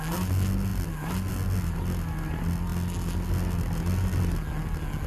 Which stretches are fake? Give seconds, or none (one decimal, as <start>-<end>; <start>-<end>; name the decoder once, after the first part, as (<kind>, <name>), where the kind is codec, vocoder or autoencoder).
none